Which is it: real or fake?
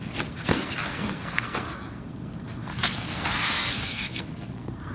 fake